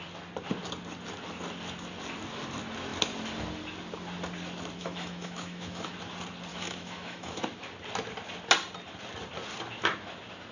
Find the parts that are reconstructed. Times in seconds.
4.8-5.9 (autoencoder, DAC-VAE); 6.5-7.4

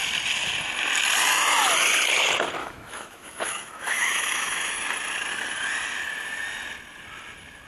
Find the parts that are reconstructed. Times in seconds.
2.6-4.7 (autoencoder, DAC-VAE)

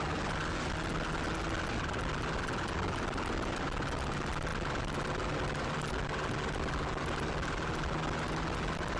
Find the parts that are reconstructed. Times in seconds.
none